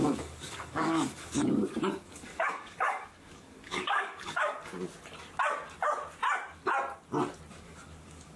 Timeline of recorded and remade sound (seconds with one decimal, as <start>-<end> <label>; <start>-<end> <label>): 0.0-4.7 remade; 4.7-7.5 recorded; 7.5-8.4 remade